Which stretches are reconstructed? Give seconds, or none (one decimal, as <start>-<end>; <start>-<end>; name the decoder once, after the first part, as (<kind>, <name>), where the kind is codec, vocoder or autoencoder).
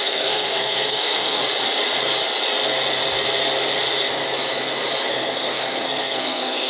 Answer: 0.0-1.4 (codec, SNAC); 5.1-6.7